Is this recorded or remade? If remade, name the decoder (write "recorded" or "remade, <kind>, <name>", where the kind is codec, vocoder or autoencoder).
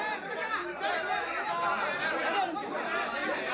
recorded